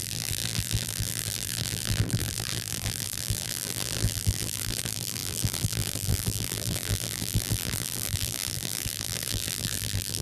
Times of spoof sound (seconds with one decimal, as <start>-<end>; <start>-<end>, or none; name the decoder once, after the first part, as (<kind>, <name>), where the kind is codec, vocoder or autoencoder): 0.0-10.2 (vocoder, BigVGAN v2)